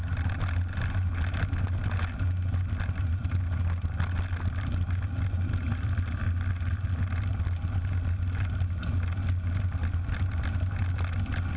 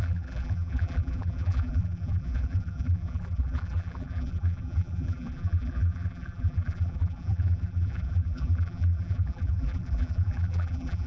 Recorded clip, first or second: first